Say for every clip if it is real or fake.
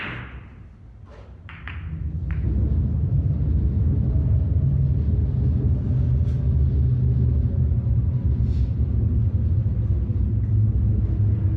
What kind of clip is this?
real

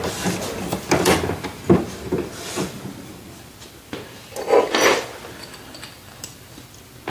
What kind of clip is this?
real